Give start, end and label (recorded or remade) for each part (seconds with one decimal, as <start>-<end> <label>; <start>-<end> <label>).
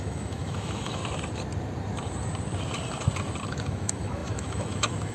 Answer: 0.0-1.0 remade; 1.0-3.5 recorded; 3.5-5.1 remade